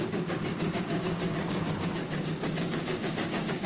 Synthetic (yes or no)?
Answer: yes